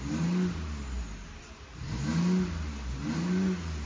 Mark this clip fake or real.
real